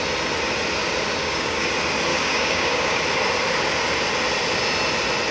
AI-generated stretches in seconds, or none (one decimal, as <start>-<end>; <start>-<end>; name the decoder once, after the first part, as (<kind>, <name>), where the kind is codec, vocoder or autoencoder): 1.2-1.7 (codec, DAC); 2.1-3.0